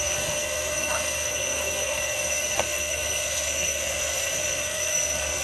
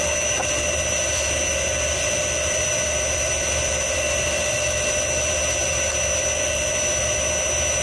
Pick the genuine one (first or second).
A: second